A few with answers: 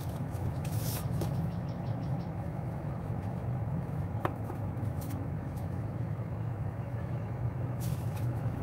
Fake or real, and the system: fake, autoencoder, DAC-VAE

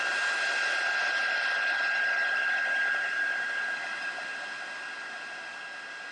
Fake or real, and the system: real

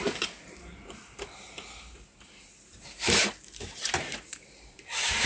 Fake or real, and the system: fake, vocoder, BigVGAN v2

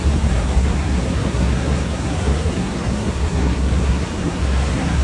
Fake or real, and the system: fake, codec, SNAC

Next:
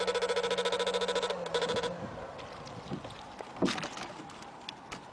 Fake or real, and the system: real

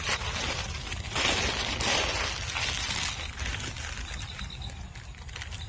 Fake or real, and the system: real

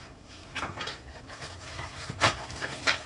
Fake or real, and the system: fake, codec, SNAC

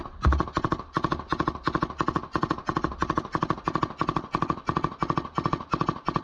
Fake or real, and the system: real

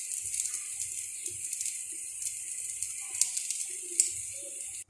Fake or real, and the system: real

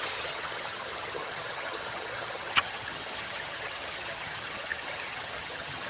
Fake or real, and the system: fake, vocoder, HiFi-GAN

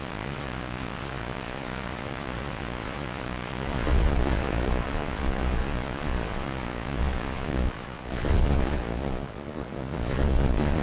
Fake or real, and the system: fake, vocoder, Vocos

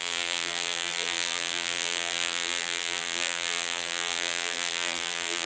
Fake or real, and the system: fake, vocoder, BigVGAN v2